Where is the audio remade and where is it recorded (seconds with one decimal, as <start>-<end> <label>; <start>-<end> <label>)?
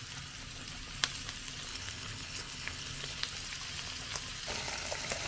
0.0-1.7 recorded; 1.7-3.2 remade; 3.2-5.3 recorded